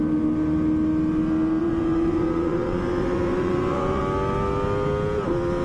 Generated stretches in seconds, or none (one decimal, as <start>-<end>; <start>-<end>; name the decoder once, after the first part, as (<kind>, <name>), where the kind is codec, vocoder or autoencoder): 1.6-4.0 (vocoder, Vocos)